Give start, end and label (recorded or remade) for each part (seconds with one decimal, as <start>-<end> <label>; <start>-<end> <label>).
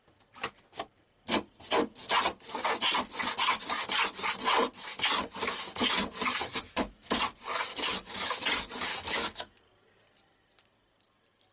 0.0-6.5 recorded; 6.5-7.2 remade; 7.2-7.7 recorded; 7.7-8.4 remade; 8.4-8.9 recorded; 8.9-9.6 remade; 9.6-11.5 recorded